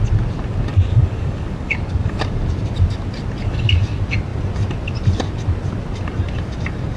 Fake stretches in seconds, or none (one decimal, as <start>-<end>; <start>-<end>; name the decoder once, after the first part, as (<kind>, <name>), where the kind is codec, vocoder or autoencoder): 0.7-2.2 (codec, DAC)